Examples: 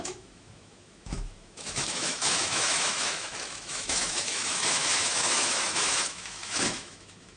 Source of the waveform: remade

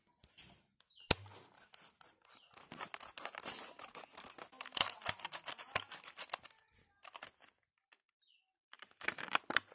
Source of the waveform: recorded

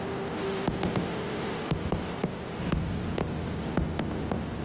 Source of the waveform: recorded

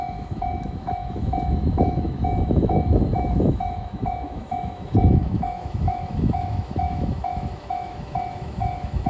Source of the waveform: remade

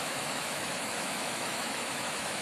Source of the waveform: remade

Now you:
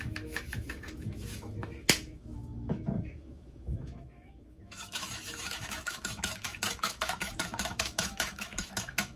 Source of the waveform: remade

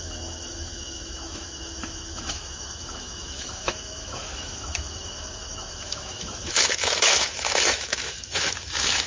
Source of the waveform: remade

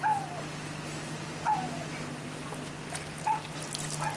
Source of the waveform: recorded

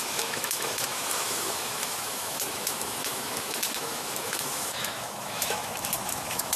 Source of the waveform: remade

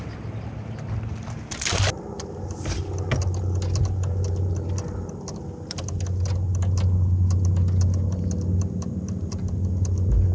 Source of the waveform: recorded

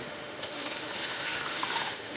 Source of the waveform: remade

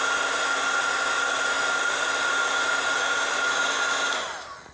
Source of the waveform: recorded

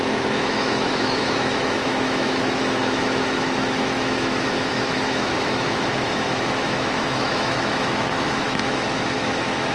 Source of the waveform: remade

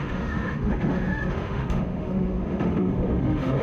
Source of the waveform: remade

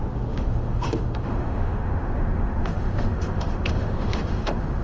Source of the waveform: remade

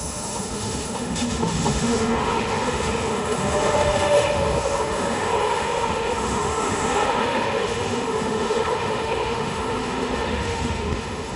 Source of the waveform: remade